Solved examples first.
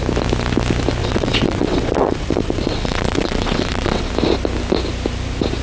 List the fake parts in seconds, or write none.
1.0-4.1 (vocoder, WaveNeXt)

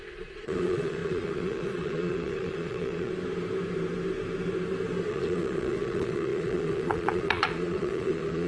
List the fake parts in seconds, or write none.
0.0-3.1 (vocoder, Vocos); 5.1-8.5

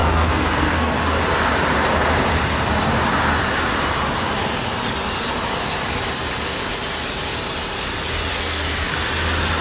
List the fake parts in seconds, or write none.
0.0-1.2 (codec, SNAC); 8.3-8.9

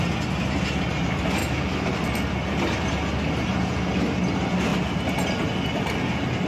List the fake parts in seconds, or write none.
1.4-1.9 (autoencoder, DAC-VAE)

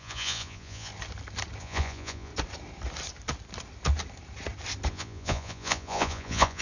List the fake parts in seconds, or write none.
0.0-0.9 (vocoder, Vocos); 1.6-2.3; 4.9-6.6

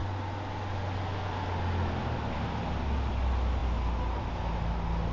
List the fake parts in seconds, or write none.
none

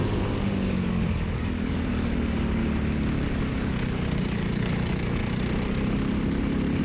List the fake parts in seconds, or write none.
0.0-2.6 (codec, DAC); 3.4-5.2